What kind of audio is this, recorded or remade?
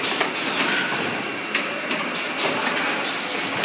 recorded